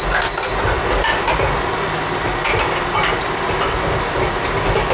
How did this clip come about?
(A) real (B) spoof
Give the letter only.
A